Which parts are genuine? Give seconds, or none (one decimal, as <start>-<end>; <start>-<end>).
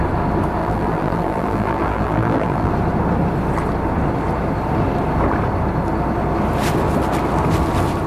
0.0-0.6; 2.7-8.1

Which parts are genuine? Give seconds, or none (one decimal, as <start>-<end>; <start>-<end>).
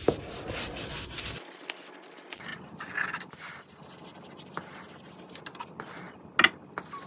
0.0-7.1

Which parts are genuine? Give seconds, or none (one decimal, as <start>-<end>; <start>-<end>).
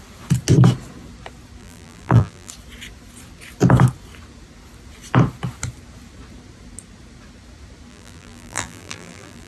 0.0-1.6; 2.5-7.9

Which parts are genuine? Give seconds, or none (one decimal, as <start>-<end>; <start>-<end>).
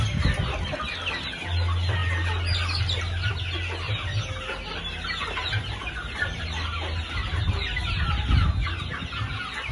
0.0-9.7